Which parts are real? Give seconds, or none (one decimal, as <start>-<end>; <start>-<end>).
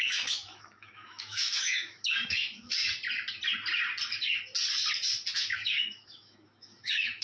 2.8-5.3